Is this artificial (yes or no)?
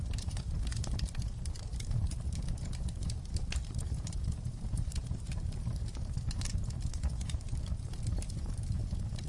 yes